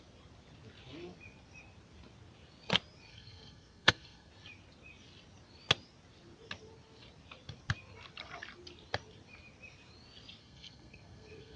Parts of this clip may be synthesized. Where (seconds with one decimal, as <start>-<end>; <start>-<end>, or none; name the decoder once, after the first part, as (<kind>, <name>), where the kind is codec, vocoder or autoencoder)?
3.1-4.3 (codec, SNAC); 10.4-11.6